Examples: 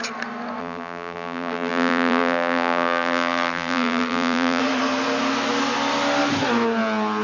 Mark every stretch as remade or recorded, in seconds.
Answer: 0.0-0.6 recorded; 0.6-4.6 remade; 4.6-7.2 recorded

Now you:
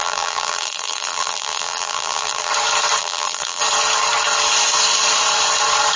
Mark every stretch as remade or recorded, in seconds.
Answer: 0.0-2.5 remade; 2.5-3.0 recorded; 3.0-3.6 remade; 3.6-6.0 recorded

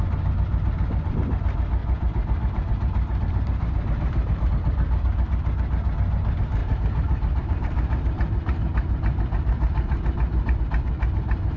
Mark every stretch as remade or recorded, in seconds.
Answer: 0.0-0.5 recorded; 0.5-1.1 remade; 1.1-1.8 recorded; 1.8-4.5 remade; 4.5-6.6 recorded; 6.6-10.6 remade; 10.6-11.6 recorded

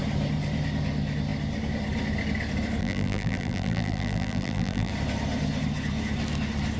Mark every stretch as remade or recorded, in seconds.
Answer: 0.0-2.8 recorded; 2.8-4.9 remade; 4.9-6.8 recorded